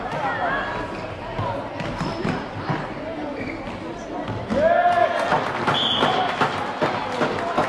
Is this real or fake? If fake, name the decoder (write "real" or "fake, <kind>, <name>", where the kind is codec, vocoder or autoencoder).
real